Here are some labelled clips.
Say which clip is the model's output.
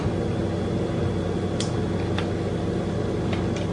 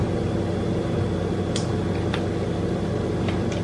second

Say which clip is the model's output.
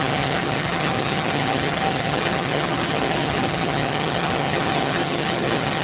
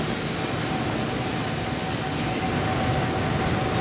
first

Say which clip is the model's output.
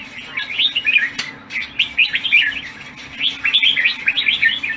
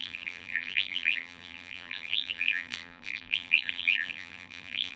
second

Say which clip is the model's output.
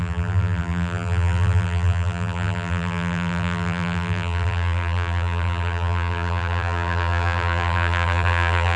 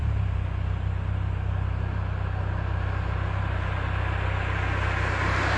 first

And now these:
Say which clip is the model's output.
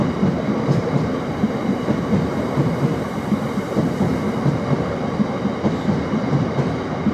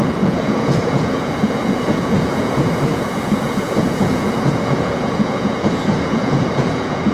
second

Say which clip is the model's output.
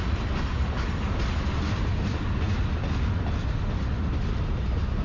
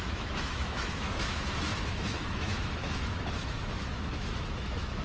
second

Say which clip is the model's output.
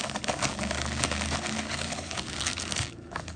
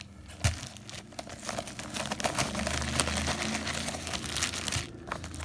first